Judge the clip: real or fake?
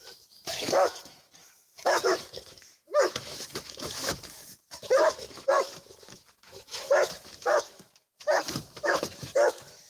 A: fake